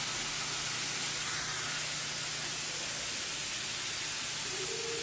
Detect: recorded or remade recorded